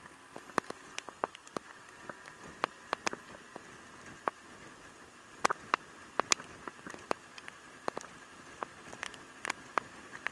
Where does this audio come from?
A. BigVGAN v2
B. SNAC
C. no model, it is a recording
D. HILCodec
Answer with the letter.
C